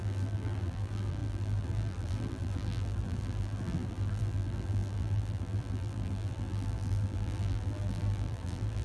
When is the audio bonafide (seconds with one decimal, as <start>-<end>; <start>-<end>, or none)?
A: none